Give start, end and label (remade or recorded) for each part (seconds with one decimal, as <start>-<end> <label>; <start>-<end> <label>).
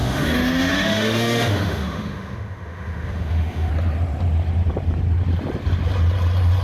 0.0-3.7 remade; 3.7-6.6 recorded